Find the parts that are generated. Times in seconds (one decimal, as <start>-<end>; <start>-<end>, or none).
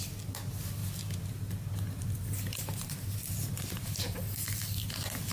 none